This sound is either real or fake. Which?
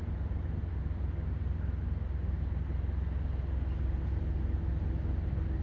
real